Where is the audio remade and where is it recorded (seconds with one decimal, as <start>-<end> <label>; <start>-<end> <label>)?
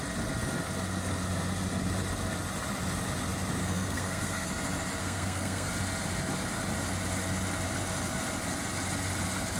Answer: 0.0-3.6 recorded; 3.6-4.5 remade; 4.5-5.0 recorded; 5.0-5.7 remade; 5.7-9.6 recorded